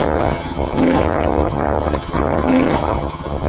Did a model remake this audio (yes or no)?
yes